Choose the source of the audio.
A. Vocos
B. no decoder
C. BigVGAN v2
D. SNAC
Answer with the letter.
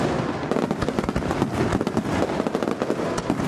B